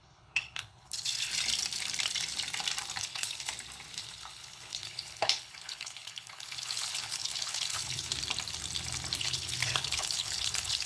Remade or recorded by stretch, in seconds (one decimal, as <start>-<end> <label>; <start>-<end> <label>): 0.0-1.3 remade; 1.3-3.0 recorded; 3.0-3.5 remade; 3.5-4.0 recorded; 4.0-8.1 remade; 8.1-9.2 recorded; 9.2-10.9 remade